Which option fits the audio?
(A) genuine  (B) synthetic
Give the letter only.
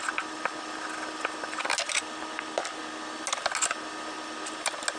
A